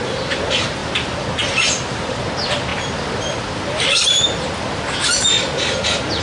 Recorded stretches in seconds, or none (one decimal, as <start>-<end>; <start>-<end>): 0.0-6.2